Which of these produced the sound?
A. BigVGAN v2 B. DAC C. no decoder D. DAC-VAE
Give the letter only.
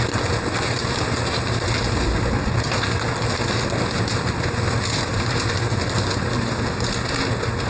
C